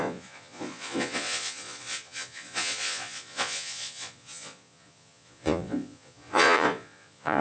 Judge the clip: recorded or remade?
remade